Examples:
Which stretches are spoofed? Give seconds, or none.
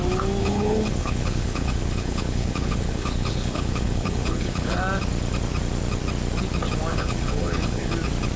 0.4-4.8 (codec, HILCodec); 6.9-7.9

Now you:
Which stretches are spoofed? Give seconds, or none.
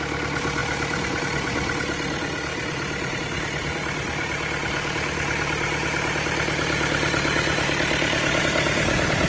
0.6-1.2 (vocoder, BigVGAN v2); 2.5-3.2; 4.6-8.4